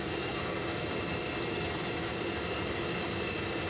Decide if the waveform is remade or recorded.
recorded